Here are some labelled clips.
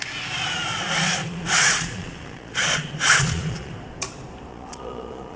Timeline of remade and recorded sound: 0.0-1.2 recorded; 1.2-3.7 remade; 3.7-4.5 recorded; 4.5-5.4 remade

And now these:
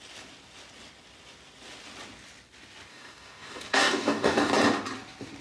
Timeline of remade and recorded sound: 0.0-2.9 recorded; 2.9-4.5 remade; 4.5-5.4 recorded

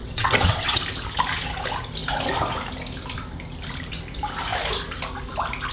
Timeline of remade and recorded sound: 0.0-0.8 remade; 0.8-5.7 recorded

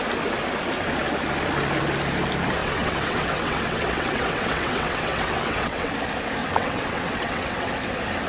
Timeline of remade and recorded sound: 0.0-2.6 recorded; 2.6-5.9 remade; 5.9-6.4 recorded; 6.4-7.7 remade; 7.7-8.3 recorded

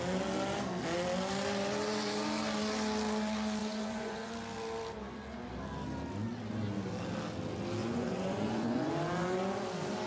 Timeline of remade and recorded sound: 0.0-3.6 recorded; 3.6-4.3 remade; 4.3-7.8 recorded; 7.8-8.9 remade; 8.9-10.1 recorded